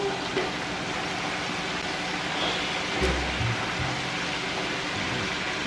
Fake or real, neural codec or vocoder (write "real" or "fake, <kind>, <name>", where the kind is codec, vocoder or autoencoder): real